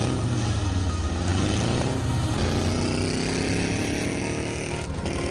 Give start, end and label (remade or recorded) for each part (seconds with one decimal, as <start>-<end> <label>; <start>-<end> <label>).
0.0-5.3 recorded